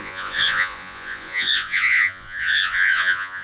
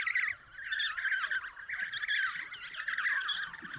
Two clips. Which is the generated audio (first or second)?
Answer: first